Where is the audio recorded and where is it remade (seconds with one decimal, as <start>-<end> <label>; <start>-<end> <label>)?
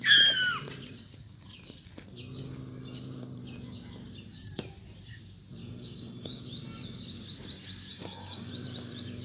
0.0-5.6 recorded; 5.6-6.4 remade; 6.4-7.9 recorded; 7.9-8.5 remade; 8.5-9.2 recorded